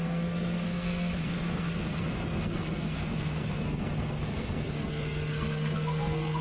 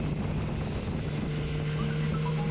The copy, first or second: first